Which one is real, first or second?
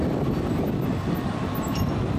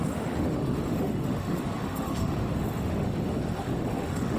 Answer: first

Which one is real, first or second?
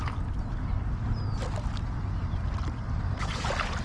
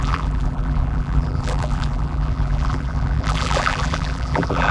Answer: first